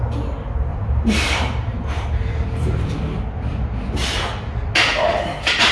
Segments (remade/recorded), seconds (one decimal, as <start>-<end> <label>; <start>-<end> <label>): 0.0-0.7 recorded; 0.7-3.0 remade; 3.0-5.7 recorded